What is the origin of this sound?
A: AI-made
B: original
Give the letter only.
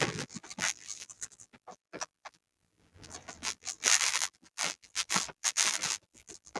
A